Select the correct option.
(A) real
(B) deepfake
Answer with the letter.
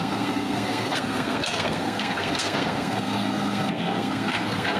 B